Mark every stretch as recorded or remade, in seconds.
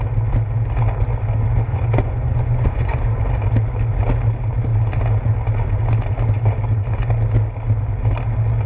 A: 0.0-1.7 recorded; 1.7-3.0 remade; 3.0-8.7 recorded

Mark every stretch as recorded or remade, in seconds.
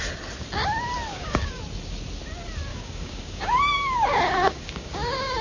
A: 0.0-1.1 recorded; 1.1-1.6 remade; 1.6-2.7 recorded; 2.7-5.4 remade